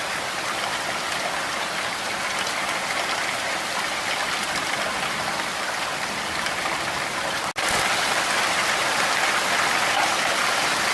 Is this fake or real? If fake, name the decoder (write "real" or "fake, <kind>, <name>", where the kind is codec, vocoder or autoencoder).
real